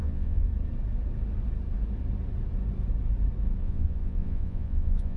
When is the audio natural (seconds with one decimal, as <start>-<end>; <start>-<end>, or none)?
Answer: 0.5-3.6